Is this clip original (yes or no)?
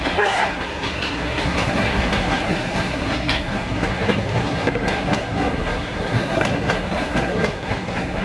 no